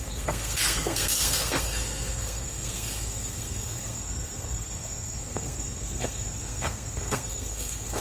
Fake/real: fake